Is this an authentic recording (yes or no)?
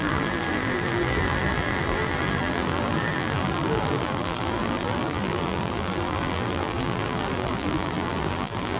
no